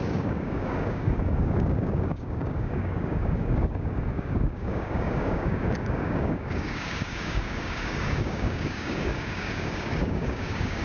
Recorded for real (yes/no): no